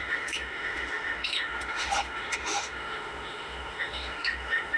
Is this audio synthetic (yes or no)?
yes